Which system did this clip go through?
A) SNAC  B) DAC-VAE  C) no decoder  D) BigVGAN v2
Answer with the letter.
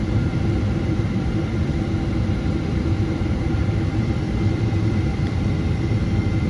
D